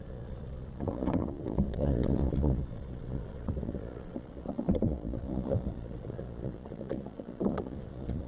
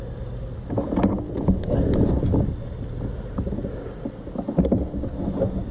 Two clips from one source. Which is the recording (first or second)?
second